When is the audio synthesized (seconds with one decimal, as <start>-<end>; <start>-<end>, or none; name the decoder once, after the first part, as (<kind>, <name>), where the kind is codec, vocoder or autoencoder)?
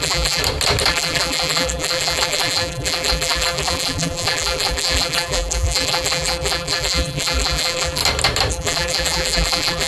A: 0.0-0.4 (vocoder, BigVGAN v2); 0.9-8.0; 8.5-9.9